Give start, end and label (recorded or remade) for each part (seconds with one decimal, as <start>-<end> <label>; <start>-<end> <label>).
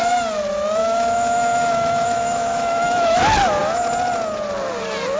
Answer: 0.0-0.8 recorded; 0.8-3.2 remade; 3.2-5.2 recorded